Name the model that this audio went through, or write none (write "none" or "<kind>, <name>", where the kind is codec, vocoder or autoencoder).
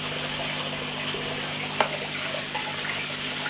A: none